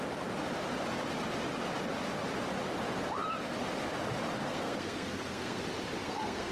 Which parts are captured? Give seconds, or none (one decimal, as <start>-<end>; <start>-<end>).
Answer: 0.0-4.4; 5.6-6.0